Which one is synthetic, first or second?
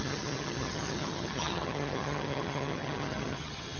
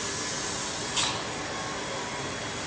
first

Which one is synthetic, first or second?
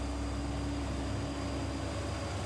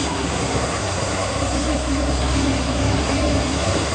second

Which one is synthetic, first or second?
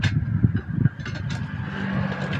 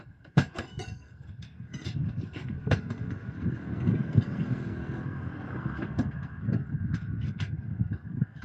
second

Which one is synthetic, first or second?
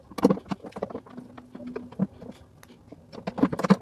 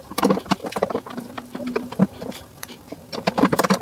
second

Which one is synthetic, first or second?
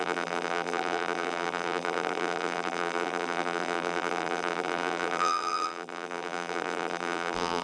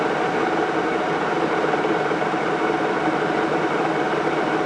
first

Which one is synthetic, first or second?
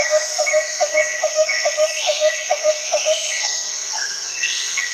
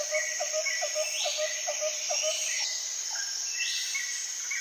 first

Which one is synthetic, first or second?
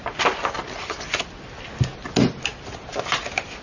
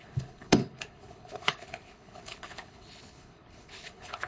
second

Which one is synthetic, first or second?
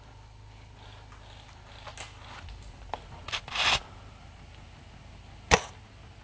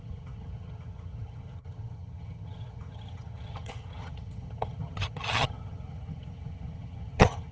second